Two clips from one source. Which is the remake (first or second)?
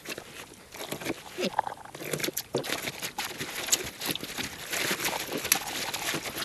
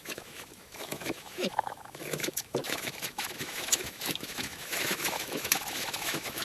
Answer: second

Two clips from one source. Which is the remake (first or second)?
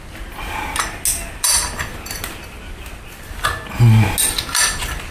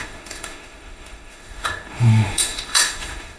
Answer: second